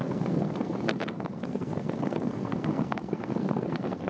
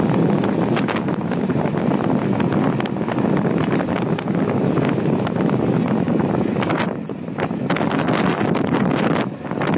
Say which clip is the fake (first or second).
first